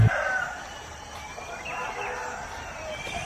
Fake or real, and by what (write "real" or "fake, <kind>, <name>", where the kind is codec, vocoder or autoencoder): real